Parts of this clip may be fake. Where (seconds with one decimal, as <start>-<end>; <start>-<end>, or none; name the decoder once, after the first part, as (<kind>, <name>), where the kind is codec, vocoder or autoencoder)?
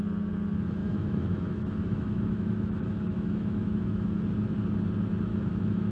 0.8-4.2 (autoencoder, DAC-VAE); 5.3-5.9